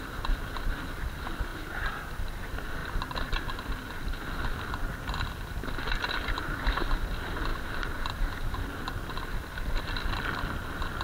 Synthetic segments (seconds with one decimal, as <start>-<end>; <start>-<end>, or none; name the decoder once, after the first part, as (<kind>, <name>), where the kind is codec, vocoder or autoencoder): none